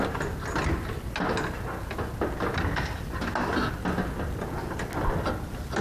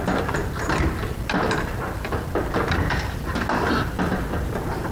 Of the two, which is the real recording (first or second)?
first